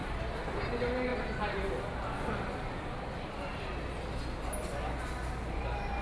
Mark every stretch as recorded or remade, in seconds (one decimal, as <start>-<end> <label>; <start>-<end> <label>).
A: 0.0-0.6 remade; 0.6-6.0 recorded